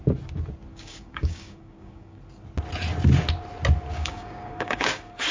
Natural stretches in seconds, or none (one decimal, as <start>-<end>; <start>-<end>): 0.0-0.7; 2.2-3.9